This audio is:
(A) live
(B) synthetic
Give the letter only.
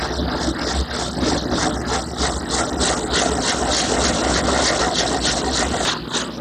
A